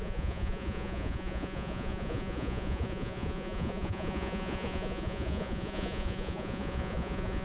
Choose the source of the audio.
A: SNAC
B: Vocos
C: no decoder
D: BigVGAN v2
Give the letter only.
B